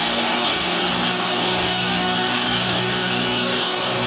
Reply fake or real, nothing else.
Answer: fake